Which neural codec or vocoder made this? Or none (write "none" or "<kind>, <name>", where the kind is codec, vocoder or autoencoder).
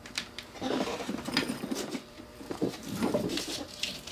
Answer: vocoder, BigVGAN v2